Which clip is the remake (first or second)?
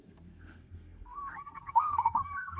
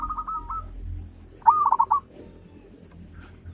first